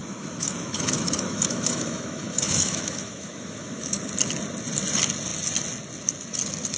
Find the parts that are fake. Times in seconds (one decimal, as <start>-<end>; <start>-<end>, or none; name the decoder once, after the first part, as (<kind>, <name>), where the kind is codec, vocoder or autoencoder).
0.0-4.1 (autoencoder, DAC-VAE)